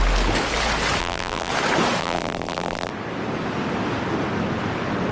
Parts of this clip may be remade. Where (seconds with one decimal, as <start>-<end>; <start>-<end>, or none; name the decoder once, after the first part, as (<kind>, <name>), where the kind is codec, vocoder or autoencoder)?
1.0-1.5 (vocoder, BigVGAN v2); 2.0-2.9